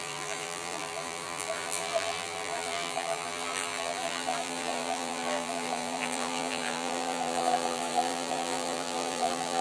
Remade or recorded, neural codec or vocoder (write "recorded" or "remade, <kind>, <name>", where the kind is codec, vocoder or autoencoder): remade, vocoder, BigVGAN v2